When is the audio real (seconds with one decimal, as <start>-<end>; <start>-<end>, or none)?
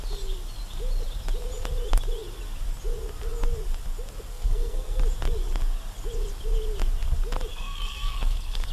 0.0-4.3; 5.0-7.5